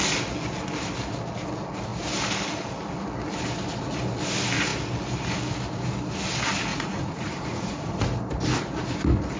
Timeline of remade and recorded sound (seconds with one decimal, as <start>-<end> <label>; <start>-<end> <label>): 0.0-6.7 recorded; 6.7-8.0 remade; 8.0-9.4 recorded